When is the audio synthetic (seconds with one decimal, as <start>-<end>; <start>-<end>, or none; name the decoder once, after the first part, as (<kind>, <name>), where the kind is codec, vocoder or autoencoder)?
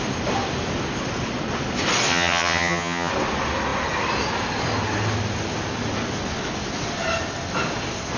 2.1-3.1 (vocoder, HiFi-GAN)